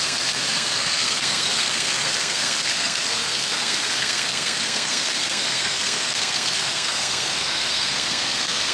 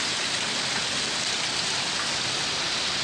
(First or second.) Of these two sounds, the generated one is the first